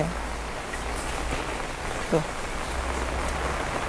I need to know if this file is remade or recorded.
recorded